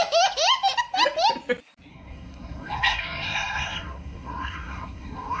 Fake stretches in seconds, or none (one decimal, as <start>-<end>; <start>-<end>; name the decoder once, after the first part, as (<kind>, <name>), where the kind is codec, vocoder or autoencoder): 1.9-5.4 (codec, SNAC)